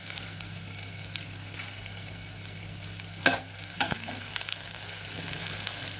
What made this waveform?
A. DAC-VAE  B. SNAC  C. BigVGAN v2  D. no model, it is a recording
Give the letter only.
B